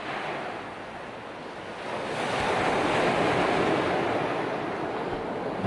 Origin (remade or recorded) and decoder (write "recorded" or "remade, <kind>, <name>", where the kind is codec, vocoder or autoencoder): recorded